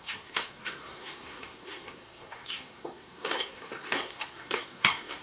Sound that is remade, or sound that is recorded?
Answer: remade